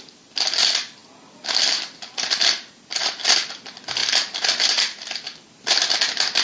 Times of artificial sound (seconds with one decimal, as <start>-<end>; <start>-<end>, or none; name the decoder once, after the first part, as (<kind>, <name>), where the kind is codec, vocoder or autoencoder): none